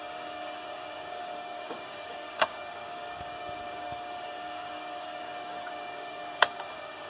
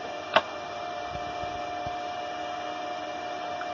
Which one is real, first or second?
second